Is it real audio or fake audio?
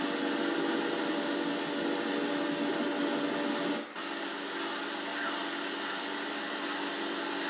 real